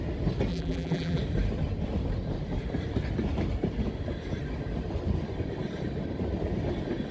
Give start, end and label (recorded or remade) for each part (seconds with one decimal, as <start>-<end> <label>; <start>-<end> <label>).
0.0-0.5 recorded; 0.5-1.2 remade; 1.2-7.1 recorded